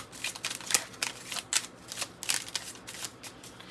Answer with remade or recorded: recorded